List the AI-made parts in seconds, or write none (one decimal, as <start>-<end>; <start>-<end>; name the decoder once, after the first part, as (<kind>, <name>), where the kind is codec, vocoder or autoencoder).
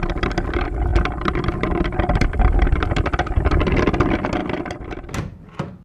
0.9-3.8 (vocoder, BigVGAN v2)